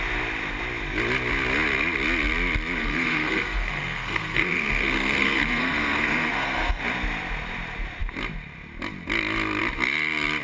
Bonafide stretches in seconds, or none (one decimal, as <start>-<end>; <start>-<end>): 0.0-2.8; 6.8-10.4